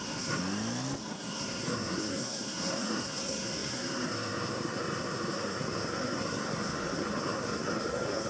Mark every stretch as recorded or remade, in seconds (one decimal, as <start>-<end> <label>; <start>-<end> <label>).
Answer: 0.0-0.4 remade; 0.4-1.0 recorded; 1.0-8.3 remade